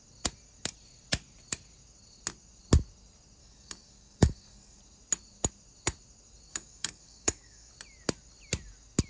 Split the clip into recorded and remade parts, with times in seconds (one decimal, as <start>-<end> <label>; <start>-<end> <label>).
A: 0.0-3.4 recorded; 3.4-4.8 remade; 4.8-6.5 recorded; 6.5-7.7 remade; 7.7-9.1 recorded